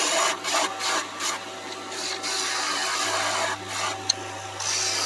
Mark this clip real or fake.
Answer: real